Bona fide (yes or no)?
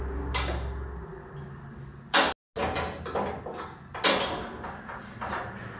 yes